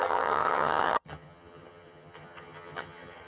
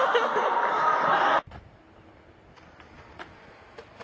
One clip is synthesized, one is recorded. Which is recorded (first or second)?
second